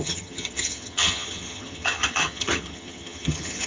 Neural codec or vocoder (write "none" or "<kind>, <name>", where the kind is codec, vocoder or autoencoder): vocoder, HiFi-GAN